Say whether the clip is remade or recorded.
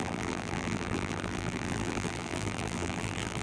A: remade